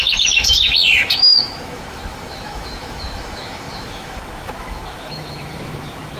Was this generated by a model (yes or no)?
yes